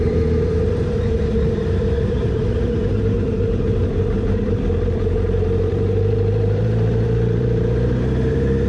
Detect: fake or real fake